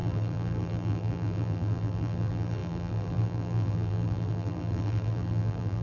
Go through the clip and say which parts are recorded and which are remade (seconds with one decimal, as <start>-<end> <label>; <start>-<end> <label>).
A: 0.0-5.8 remade